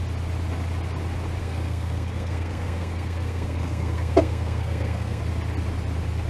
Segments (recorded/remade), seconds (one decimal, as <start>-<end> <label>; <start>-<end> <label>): 0.0-1.4 recorded; 1.4-5.2 remade; 5.2-6.3 recorded